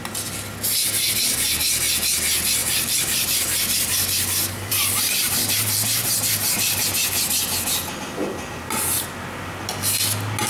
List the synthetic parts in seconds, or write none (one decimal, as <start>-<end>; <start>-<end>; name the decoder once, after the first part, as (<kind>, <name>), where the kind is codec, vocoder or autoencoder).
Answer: 2.6-6.8 (vocoder, BigVGAN v2)